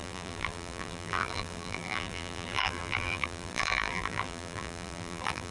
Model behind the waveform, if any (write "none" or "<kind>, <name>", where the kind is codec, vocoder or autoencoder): vocoder, BigVGAN v2